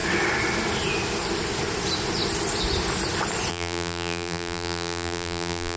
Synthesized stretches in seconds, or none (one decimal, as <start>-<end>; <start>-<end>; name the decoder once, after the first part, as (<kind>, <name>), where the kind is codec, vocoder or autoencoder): 3.5-5.8 (vocoder, BigVGAN v2)